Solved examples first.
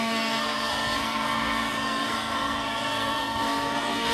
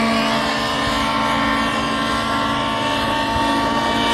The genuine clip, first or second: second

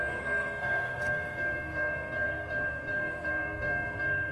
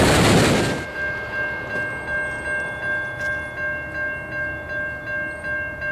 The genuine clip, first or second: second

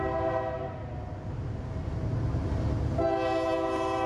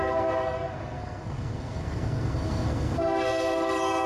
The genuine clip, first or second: first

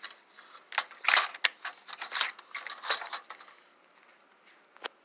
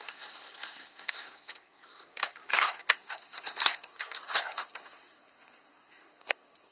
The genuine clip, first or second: first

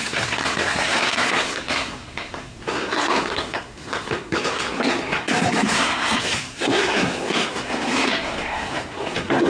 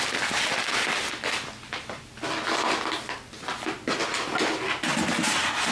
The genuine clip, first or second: second